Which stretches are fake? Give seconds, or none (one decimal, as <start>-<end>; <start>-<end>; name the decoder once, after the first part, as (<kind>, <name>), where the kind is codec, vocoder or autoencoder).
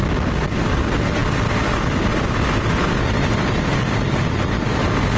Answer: 0.0-0.6 (vocoder, BigVGAN v2)